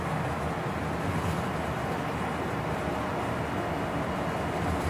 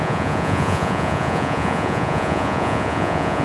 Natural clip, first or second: first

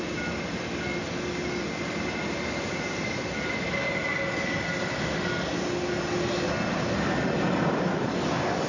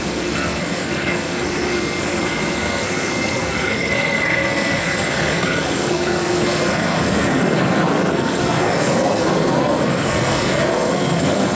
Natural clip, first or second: first